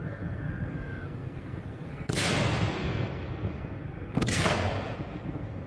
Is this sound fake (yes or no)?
yes